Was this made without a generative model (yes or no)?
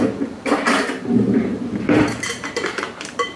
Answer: no